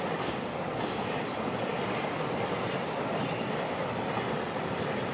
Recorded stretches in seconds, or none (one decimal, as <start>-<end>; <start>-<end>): 0.0-5.1

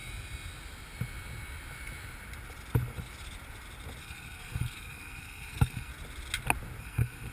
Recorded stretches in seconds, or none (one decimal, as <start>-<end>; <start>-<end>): 0.0-4.0; 5.9-6.8

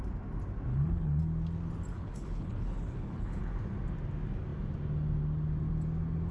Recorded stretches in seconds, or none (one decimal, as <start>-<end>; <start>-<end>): 0.0-0.7; 1.2-1.9; 3.4-6.3

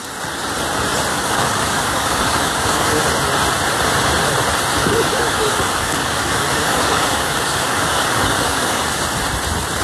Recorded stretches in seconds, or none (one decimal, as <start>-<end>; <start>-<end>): 0.0-1.1; 3.0-4.8; 9.0-9.8